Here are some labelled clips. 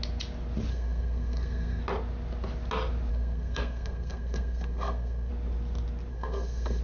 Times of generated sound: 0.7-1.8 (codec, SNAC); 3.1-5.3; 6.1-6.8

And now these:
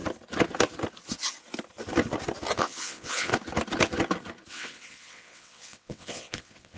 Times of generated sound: 2.6-3.3 (vocoder, WaveNeXt); 4.5-6.8

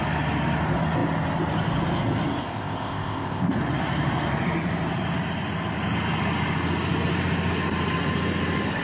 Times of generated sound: 2.4-3.5 (codec, ZipCodec)